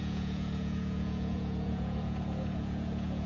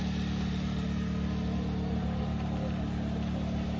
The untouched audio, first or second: second